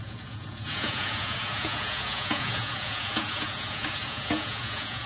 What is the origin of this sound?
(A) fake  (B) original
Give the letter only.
A